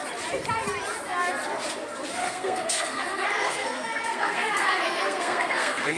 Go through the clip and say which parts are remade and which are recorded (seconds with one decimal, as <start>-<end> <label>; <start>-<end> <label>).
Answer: 0.0-2.2 recorded; 2.2-6.0 remade